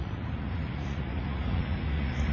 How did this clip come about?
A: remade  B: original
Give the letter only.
A